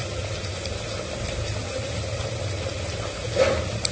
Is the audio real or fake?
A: real